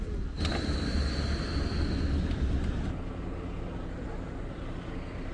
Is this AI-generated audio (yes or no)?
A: no